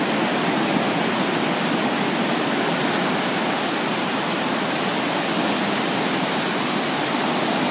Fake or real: real